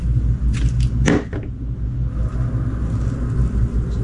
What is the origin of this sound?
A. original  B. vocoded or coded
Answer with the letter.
A